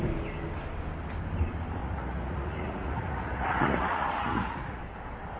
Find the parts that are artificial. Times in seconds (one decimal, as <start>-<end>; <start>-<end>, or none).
1.8-4.8